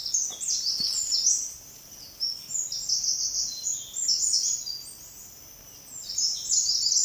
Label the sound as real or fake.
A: real